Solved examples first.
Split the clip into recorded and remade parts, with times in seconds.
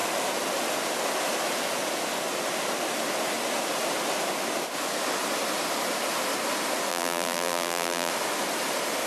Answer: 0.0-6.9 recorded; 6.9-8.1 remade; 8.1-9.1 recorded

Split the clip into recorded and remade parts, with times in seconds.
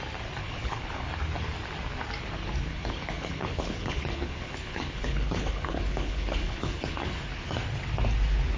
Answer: 0.0-0.4 recorded; 0.4-1.1 remade; 1.1-2.7 recorded; 2.7-7.2 remade; 7.2-8.6 recorded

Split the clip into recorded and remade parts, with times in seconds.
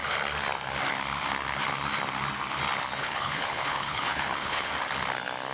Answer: 0.0-3.0 recorded; 3.0-4.7 remade; 4.7-5.5 recorded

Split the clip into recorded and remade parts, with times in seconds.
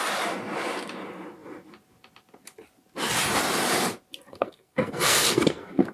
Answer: 0.0-4.3 recorded; 4.3-5.9 remade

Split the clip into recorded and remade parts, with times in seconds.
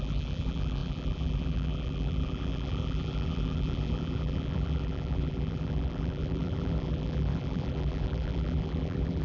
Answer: 0.0-9.2 remade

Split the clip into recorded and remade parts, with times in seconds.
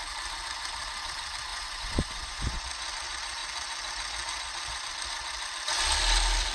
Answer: 0.0-1.5 recorded; 1.5-2.6 remade; 2.6-6.5 recorded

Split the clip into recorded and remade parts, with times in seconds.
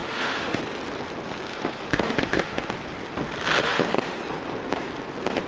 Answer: 0.0-0.6 remade; 0.6-1.5 recorded; 1.5-2.7 remade; 2.7-3.6 recorded; 3.6-4.2 remade; 4.2-5.5 recorded